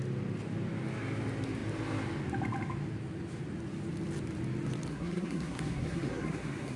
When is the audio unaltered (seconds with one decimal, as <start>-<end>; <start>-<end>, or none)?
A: 0.0-4.9